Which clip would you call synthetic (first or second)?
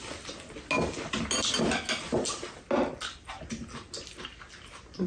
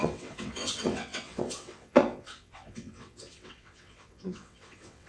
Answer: second